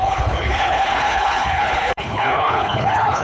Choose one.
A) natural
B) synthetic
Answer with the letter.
B